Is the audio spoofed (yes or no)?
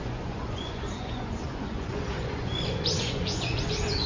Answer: yes